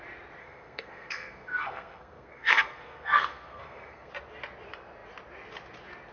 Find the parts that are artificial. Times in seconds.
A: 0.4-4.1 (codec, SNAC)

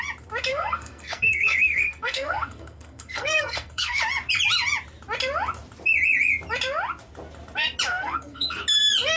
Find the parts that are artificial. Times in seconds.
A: 0.5-4.0 (codec, SNAC); 7.9-8.6

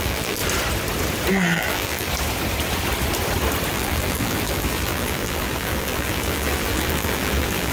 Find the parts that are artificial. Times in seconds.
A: 0.0-0.4 (vocoder, BigVGAN v2); 1.3-2.1; 3.7-7.7

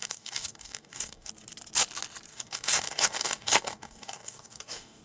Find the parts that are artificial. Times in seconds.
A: 0.0-1.3 (codec, DAC); 2.3-5.0